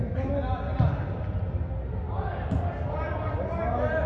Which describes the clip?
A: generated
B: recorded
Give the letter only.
B